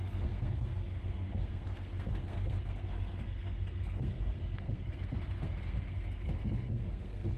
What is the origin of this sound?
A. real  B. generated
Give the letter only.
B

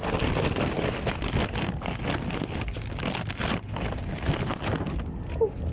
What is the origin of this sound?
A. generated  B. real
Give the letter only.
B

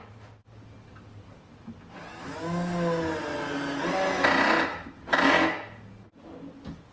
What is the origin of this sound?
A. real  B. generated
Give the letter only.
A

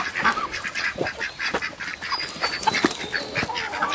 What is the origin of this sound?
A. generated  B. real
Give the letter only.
B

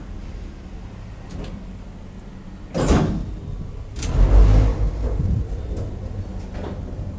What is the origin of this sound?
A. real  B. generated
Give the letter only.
A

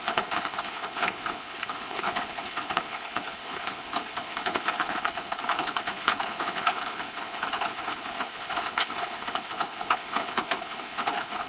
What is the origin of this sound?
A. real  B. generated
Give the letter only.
B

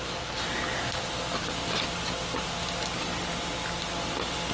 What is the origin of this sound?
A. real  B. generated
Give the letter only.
A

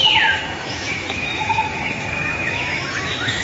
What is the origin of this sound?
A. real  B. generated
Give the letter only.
B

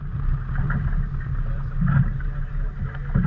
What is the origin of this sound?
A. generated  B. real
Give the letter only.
B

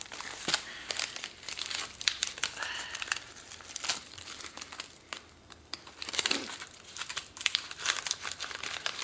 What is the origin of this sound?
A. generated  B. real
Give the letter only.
A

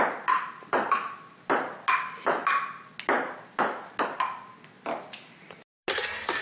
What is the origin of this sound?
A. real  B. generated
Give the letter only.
A